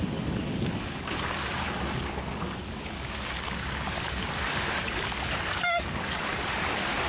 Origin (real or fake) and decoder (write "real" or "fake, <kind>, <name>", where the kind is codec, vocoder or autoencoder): fake, codec, DAC